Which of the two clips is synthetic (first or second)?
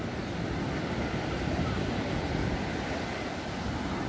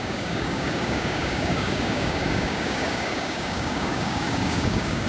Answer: second